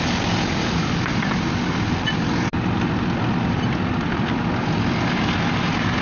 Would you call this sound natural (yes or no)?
yes